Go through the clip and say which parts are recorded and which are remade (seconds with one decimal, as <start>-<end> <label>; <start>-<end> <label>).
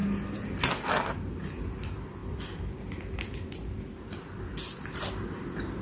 0.0-5.8 recorded